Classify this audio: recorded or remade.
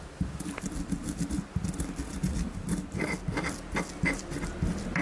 recorded